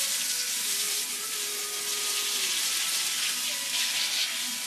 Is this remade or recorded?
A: recorded